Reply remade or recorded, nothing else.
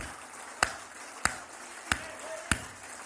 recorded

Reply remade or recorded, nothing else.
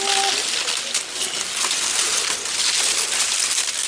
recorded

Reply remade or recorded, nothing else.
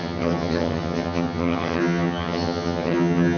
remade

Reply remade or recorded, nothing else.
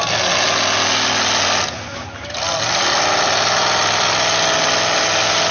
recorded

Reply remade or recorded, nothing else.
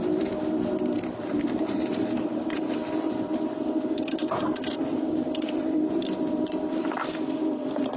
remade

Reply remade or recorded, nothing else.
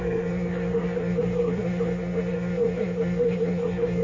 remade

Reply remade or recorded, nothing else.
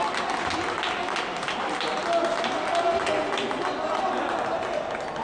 recorded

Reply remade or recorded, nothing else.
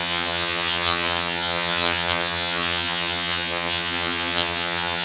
remade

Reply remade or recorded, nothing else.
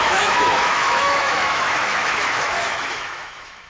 remade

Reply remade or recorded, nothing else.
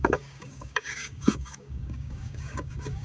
remade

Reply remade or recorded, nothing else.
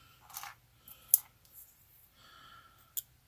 recorded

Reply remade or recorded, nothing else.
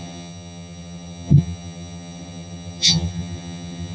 remade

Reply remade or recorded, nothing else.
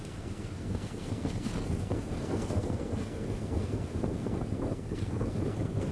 remade